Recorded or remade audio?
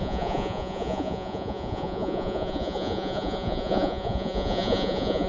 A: remade